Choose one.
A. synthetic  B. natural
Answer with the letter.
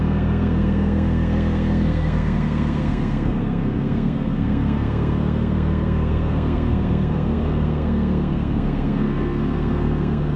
A